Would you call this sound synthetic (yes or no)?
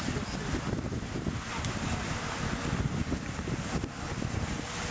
no